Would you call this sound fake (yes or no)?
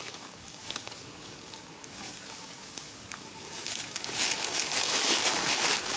yes